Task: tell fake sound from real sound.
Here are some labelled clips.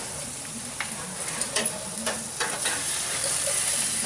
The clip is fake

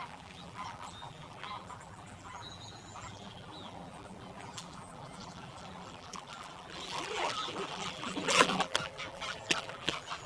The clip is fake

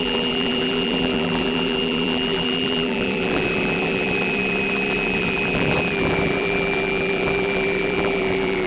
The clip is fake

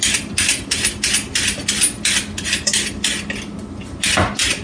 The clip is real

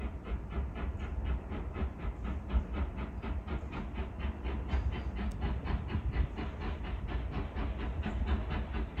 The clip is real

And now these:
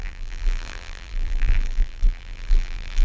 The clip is fake